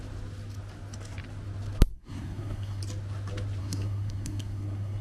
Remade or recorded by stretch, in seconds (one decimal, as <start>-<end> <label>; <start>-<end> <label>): 0.0-1.9 recorded; 1.9-2.8 remade; 2.8-3.6 recorded; 3.6-5.0 remade